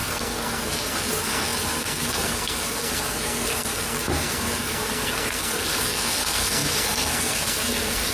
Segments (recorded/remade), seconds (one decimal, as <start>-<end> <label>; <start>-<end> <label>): 0.0-8.1 remade